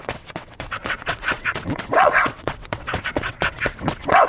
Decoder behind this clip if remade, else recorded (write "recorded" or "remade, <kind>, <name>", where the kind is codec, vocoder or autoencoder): remade, vocoder, WaveNeXt